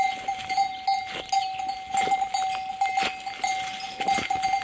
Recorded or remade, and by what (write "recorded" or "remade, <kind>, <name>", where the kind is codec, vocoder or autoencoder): recorded